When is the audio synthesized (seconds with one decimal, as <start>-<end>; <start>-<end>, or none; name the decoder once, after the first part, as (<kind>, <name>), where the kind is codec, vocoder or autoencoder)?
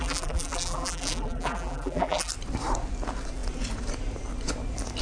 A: 0.0-2.3 (vocoder, BigVGAN v2)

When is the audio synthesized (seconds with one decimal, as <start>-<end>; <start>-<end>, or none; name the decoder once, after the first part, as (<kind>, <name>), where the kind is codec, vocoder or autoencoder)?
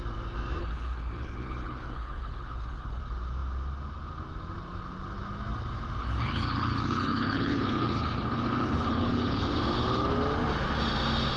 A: 0.6-3.0 (codec, HILCodec); 6.0-9.5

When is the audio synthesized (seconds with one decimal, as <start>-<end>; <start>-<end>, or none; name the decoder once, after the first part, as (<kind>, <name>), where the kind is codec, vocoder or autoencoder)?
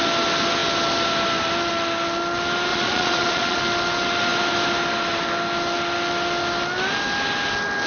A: 2.7-3.6 (vocoder, Vocos)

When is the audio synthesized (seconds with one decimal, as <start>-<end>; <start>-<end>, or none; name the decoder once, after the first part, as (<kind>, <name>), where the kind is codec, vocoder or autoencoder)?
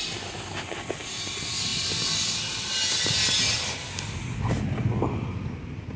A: none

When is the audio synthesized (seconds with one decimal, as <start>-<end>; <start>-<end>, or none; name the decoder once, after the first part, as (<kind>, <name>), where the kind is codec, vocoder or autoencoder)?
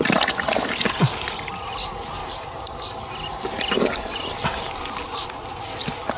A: none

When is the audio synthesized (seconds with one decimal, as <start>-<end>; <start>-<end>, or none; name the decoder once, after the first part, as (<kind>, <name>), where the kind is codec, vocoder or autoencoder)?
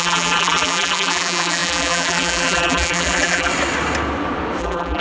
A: 0.0-3.5 (vocoder, BigVGAN v2); 4.6-5.0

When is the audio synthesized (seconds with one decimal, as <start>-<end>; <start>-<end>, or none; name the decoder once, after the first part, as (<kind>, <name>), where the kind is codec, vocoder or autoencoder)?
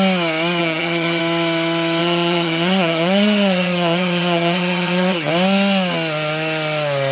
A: 0.6-1.2 (vocoder, HiFi-GAN); 2.0-5.3